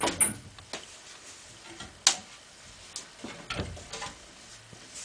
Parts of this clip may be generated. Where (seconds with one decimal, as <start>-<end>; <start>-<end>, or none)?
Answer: none